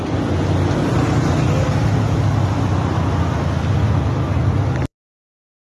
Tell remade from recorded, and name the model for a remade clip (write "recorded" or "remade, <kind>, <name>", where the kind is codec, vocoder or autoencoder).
recorded